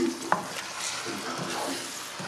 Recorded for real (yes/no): yes